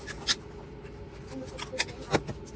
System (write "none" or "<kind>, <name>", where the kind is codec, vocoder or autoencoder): none